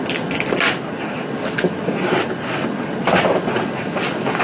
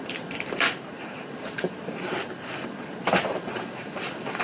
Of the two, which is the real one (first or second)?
first